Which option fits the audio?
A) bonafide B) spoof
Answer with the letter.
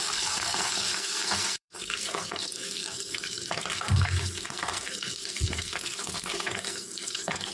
B